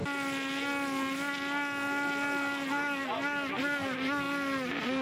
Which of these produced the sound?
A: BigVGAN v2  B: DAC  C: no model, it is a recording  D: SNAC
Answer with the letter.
C